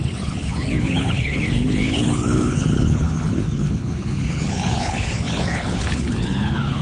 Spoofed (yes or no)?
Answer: yes